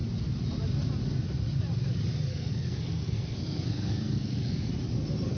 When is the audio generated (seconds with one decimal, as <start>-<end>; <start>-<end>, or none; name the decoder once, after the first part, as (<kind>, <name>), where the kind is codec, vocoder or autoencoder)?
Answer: 2.3-4.7 (codec, SNAC)